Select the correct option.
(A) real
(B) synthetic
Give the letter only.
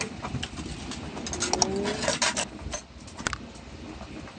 A